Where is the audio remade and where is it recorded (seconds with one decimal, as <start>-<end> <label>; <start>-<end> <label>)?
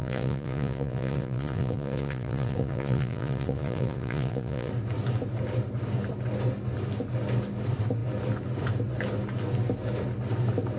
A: 0.0-4.7 remade; 4.7-10.8 recorded